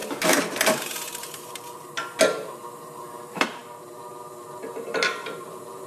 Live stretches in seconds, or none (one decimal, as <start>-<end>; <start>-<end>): none